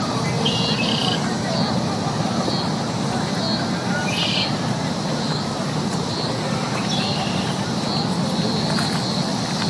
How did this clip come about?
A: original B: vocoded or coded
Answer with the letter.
A